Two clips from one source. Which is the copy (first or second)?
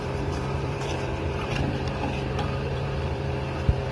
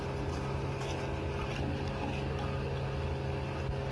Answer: first